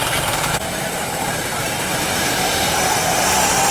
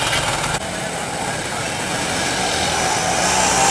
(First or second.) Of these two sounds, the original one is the second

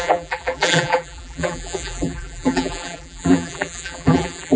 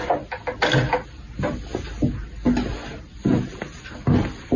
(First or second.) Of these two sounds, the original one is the second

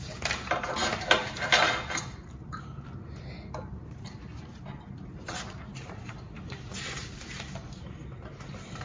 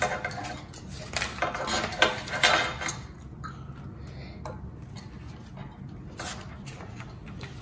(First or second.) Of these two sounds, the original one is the second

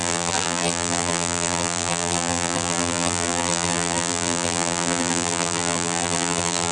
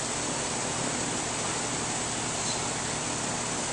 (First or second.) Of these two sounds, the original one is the second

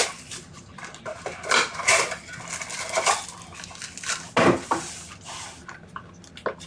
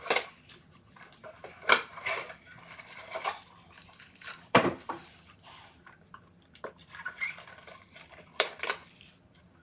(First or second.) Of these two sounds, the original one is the first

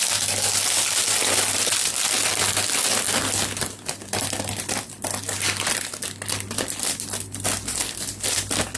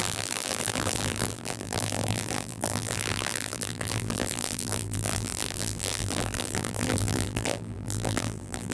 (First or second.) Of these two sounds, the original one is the first